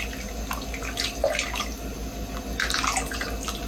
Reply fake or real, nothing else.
real